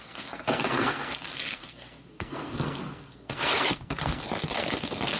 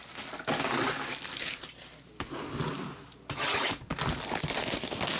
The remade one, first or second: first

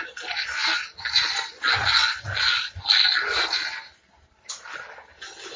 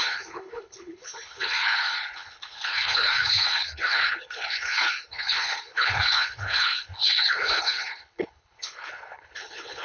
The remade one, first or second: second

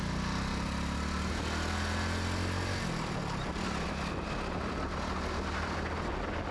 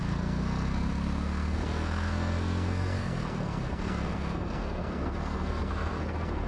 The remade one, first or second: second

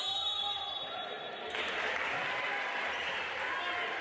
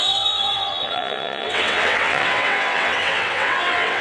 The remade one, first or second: second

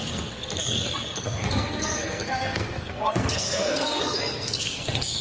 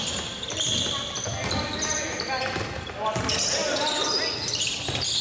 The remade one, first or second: first